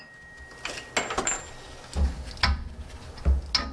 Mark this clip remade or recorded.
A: recorded